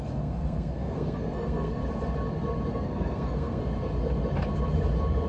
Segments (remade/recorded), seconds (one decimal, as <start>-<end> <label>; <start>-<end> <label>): 0.0-1.8 remade; 1.8-2.7 recorded; 2.7-3.6 remade; 3.6-5.3 recorded